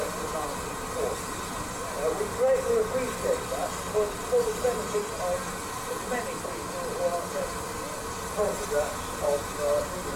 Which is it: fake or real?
real